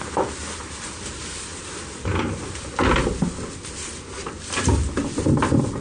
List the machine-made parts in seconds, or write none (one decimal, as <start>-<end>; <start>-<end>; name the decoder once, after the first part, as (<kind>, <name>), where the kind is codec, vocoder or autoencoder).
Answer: none